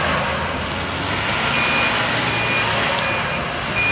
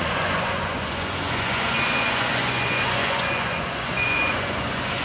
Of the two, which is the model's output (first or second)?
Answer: second